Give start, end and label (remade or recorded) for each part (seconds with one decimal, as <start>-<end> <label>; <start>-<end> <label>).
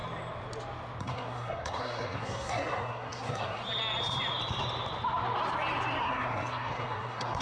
0.0-1.0 recorded; 1.0-3.6 remade; 3.6-6.0 recorded; 6.0-7.4 remade